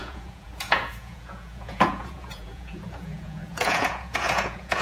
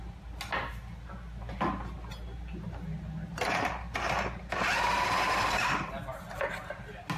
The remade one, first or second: first